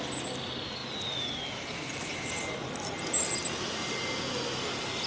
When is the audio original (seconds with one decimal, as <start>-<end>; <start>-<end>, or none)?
0.0-5.1